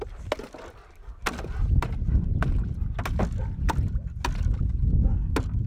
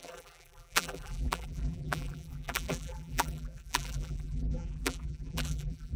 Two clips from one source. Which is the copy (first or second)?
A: second